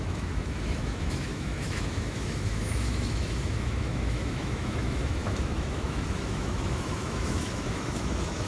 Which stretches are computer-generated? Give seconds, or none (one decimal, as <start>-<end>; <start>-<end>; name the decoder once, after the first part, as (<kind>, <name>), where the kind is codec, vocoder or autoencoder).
0.0-8.5 (autoencoder, DAC-VAE)